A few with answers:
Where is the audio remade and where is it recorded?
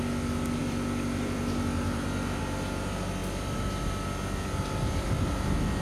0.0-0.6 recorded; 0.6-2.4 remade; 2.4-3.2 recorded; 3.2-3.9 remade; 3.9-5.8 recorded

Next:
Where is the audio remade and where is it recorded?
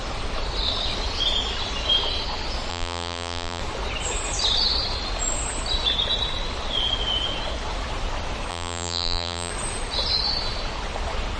0.0-2.7 recorded; 2.7-3.6 remade; 3.6-8.5 recorded; 8.5-9.5 remade; 9.5-11.4 recorded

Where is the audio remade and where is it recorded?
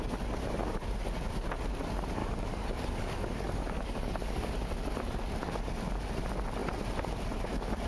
0.0-2.2 recorded; 2.2-4.5 remade; 4.5-7.9 recorded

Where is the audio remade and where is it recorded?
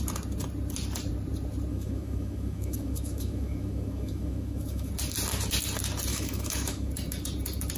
0.0-1.7 recorded; 1.7-4.9 remade; 4.9-6.1 recorded; 6.1-6.9 remade; 6.9-7.8 recorded